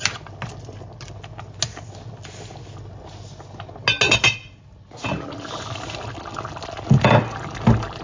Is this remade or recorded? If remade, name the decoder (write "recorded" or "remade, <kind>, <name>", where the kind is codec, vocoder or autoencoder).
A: recorded